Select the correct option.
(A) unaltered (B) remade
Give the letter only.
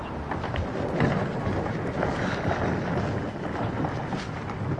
A